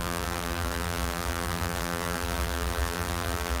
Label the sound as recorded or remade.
remade